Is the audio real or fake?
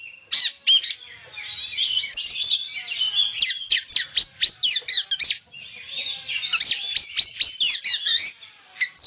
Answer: real